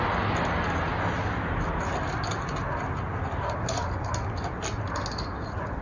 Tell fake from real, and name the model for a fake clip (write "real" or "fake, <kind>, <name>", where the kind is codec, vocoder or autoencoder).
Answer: real